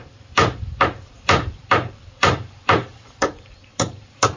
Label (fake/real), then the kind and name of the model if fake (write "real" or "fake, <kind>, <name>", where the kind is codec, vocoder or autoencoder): fake, vocoder, BigVGAN v2